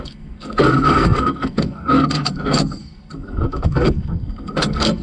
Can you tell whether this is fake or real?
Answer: fake